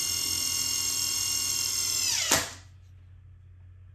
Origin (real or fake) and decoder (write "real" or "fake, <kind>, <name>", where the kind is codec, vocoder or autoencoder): real